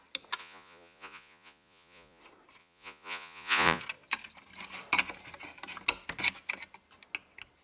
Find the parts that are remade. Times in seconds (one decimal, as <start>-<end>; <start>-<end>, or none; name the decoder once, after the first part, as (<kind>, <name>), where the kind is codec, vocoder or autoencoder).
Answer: 0.4-2.2 (vocoder, Vocos); 2.6-3.8